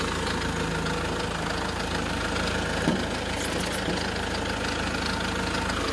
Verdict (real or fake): real